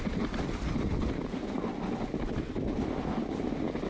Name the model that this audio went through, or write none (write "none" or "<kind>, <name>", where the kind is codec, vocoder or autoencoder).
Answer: none